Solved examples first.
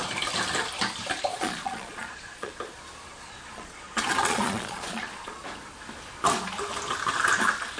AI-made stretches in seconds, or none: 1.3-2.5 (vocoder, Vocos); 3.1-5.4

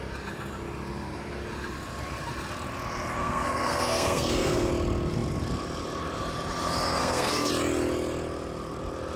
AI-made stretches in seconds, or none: 3.2-4.7 (codec, SNAC); 7.0-7.5

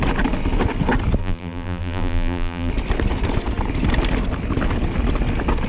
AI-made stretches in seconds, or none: 1.2-2.7 (vocoder, BigVGAN v2)

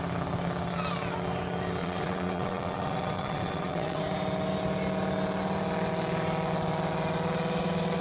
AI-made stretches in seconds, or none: 1.8-4.0 (vocoder, WaveNeXt)

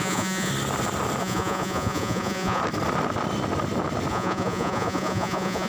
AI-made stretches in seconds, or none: 0.0-0.5 (vocoder, Vocos); 1.2-2.6; 4.1-5.7

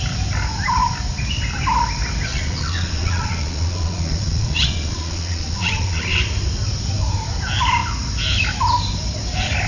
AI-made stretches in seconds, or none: 2.3-6.2 (vocoder, Vocos)